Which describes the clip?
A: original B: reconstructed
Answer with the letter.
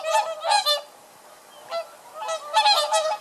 A